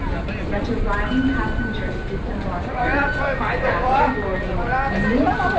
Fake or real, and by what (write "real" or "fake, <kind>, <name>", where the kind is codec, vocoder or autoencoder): real